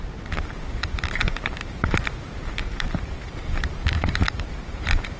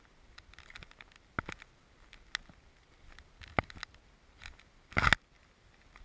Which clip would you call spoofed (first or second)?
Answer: first